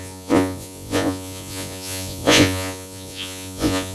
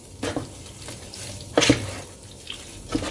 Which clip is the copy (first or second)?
first